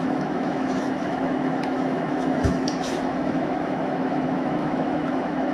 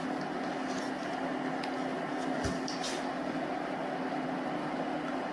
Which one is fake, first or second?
first